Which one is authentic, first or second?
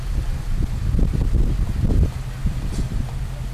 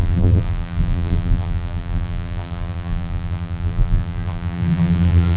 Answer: first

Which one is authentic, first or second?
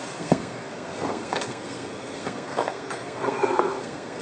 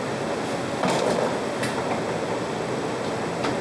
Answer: second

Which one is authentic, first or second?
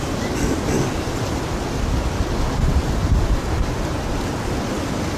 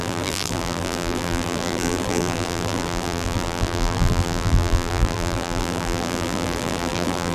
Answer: first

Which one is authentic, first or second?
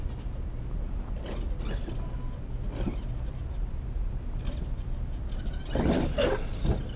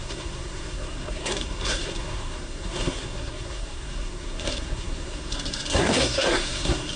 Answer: first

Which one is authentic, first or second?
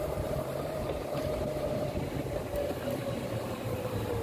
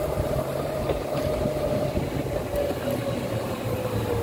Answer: second